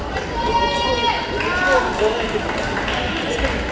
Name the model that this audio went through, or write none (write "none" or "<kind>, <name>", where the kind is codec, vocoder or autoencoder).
none